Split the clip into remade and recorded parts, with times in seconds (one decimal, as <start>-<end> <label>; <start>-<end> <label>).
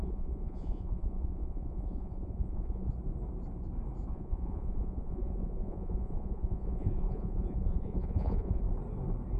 0.0-2.9 remade; 2.9-4.1 recorded; 4.1-8.6 remade; 8.6-9.4 recorded